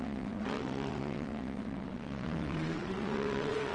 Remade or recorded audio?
remade